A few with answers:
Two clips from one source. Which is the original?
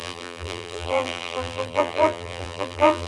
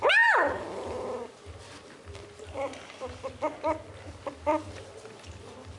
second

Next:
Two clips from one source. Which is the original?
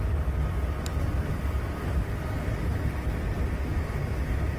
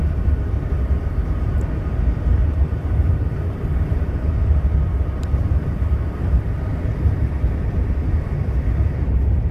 first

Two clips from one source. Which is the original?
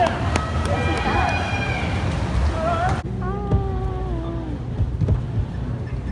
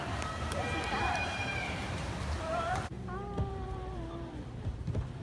first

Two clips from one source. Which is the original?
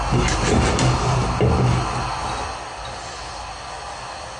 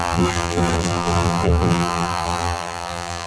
first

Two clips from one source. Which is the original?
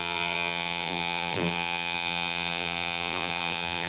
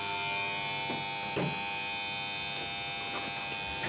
second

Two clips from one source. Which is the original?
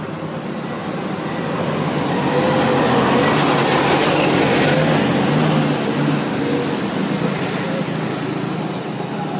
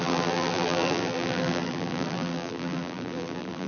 first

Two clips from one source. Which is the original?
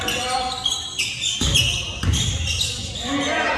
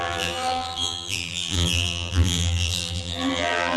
first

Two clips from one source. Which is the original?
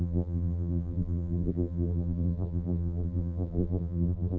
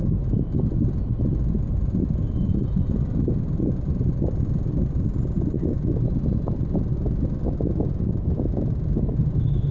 second